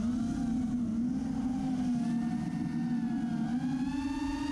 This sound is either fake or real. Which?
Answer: real